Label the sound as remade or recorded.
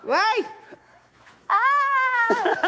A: remade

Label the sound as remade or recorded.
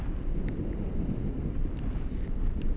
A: recorded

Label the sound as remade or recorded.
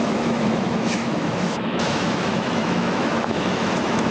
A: remade